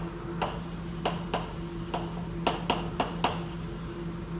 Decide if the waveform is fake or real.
real